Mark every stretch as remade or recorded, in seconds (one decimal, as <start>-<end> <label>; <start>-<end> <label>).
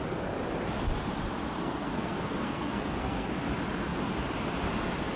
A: 0.0-1.6 recorded; 1.6-3.3 remade; 3.3-5.2 recorded